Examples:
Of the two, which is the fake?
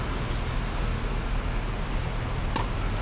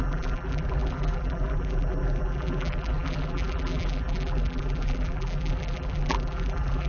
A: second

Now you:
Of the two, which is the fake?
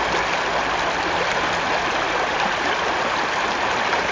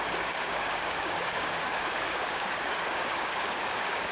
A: second